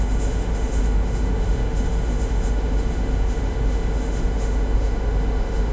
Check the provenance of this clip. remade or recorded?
remade